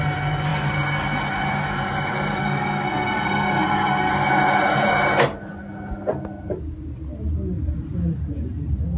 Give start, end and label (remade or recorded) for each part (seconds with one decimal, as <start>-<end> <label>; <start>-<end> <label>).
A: 0.0-2.4 recorded; 2.4-4.1 remade; 4.1-9.0 recorded